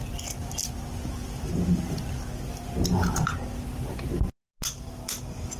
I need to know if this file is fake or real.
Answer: real